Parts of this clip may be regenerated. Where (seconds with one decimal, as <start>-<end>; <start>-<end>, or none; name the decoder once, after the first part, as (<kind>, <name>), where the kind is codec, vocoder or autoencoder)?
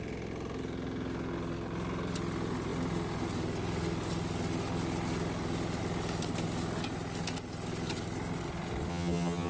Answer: 8.9-9.5 (vocoder, HiFi-GAN)